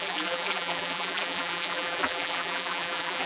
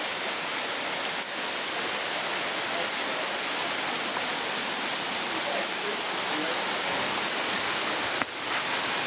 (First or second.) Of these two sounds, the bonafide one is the second